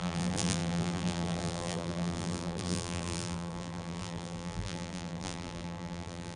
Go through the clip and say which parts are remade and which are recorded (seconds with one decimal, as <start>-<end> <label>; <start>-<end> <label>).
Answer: 0.0-6.4 remade